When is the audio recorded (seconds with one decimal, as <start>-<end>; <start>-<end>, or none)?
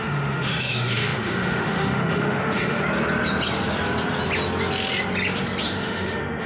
2.8-5.6